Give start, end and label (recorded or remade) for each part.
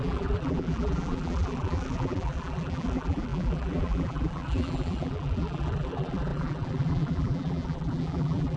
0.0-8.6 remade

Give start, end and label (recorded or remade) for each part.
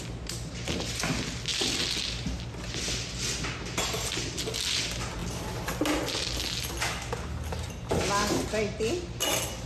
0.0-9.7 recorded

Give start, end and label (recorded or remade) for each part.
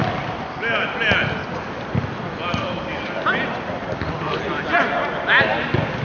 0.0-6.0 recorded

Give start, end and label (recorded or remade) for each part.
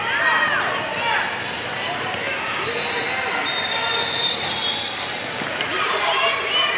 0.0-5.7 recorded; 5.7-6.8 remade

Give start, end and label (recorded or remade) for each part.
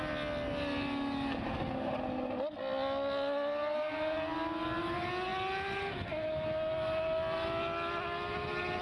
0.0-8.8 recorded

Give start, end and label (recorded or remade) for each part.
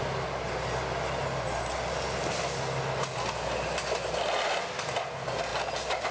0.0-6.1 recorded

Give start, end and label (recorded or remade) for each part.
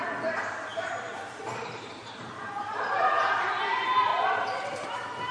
0.0-0.7 recorded; 0.7-3.6 remade; 3.6-5.3 recorded